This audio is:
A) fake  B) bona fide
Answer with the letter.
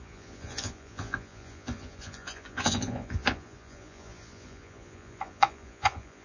A